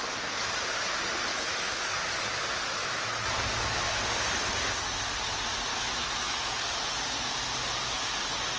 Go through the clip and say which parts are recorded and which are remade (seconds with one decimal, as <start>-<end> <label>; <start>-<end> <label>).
0.0-1.3 recorded; 1.3-2.0 remade; 2.0-2.8 recorded; 2.8-3.8 remade; 3.8-5.7 recorded; 5.7-6.4 remade; 6.4-8.6 recorded